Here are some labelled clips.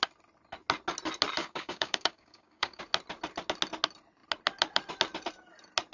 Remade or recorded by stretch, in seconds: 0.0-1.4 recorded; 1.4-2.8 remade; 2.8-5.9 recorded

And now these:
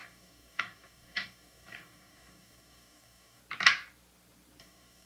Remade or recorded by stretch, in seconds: 0.0-3.4 remade; 3.4-4.6 recorded; 4.6-5.1 remade

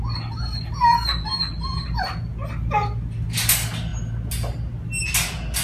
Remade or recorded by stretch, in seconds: 0.0-5.6 recorded

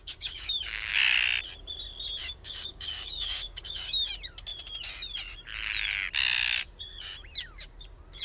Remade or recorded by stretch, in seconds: 0.0-0.9 remade; 0.9-2.2 recorded; 2.2-4.1 remade; 4.1-8.2 recorded

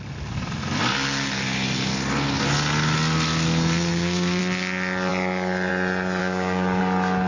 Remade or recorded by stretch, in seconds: 0.0-3.9 recorded; 3.9-4.4 remade; 4.4-6.2 recorded; 6.2-6.8 remade; 6.8-7.3 recorded

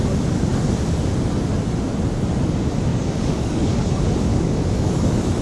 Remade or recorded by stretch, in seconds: 0.0-2.9 recorded; 2.9-3.9 remade; 3.9-4.3 recorded; 4.3-5.4 remade

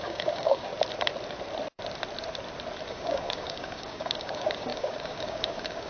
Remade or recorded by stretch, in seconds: 0.0-0.7 remade; 0.7-2.9 recorded; 2.9-5.9 remade